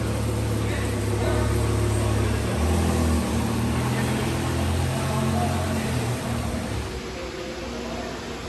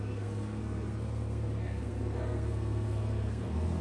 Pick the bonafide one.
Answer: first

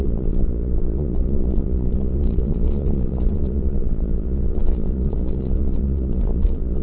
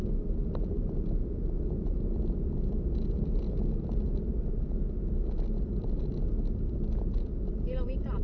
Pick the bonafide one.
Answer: second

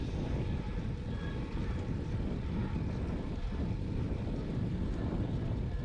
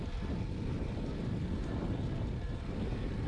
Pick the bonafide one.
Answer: second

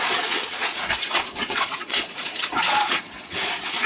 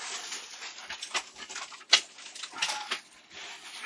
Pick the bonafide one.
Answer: second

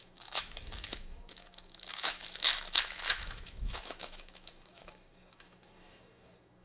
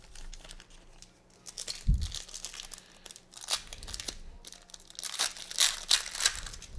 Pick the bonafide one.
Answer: second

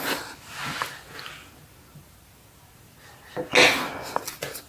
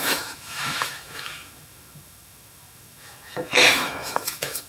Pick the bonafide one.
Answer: first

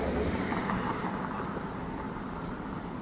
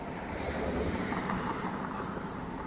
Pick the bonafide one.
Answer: first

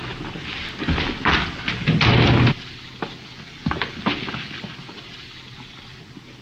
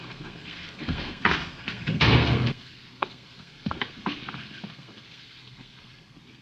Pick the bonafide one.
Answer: first